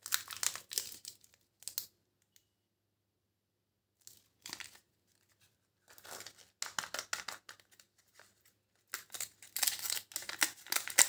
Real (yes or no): yes